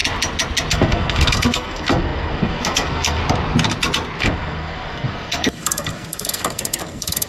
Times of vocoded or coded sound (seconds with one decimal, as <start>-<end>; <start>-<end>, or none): 0.7-3.2; 4.2-7.3